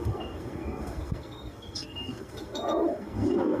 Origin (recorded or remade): remade